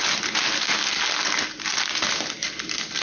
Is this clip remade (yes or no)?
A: no